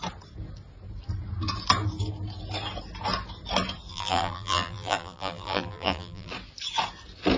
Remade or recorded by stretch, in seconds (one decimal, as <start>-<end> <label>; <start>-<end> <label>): 0.0-3.9 recorded; 3.9-6.3 remade; 6.3-7.4 recorded